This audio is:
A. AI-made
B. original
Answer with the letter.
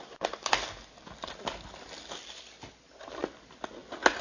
B